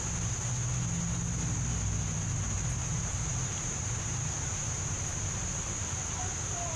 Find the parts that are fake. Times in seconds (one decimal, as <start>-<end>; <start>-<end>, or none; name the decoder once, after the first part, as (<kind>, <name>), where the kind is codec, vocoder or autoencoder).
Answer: 2.8-6.0 (vocoder, BigVGAN v2)